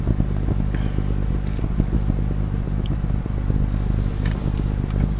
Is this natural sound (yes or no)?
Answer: yes